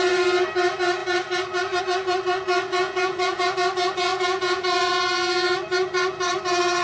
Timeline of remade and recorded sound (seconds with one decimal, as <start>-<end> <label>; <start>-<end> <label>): 0.0-2.8 recorded; 2.8-3.4 remade; 3.4-4.1 recorded; 4.1-4.9 remade; 4.9-6.8 recorded